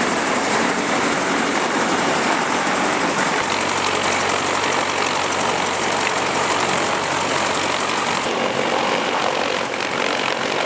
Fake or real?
fake